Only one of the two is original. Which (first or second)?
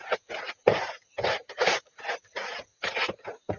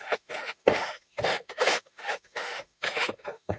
first